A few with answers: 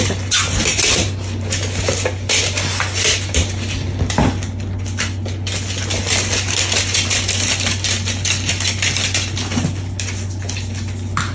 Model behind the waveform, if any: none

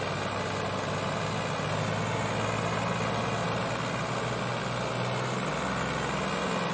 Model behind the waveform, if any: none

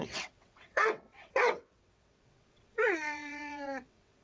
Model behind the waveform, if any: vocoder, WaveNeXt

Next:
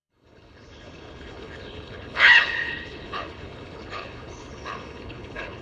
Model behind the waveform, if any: codec, HILCodec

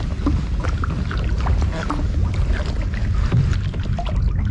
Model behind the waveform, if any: none